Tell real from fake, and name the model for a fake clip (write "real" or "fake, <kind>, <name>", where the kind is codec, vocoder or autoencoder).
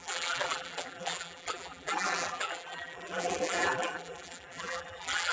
fake, vocoder, BigVGAN v2